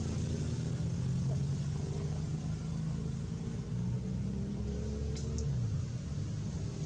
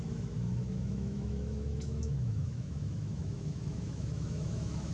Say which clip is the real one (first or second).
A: first